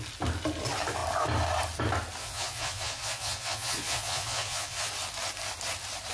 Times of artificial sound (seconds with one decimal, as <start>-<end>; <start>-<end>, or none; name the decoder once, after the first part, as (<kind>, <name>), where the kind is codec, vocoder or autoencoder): 2.2-4.9 (vocoder, Vocos)